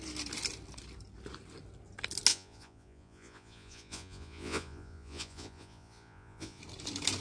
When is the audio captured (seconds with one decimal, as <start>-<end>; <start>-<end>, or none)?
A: 0.0-2.3; 6.6-7.2